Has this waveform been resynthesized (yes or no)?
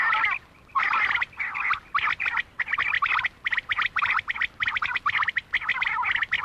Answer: no